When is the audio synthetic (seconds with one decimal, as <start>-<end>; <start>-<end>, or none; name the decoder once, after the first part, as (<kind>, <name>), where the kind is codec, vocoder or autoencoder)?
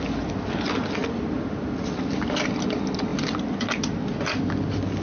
none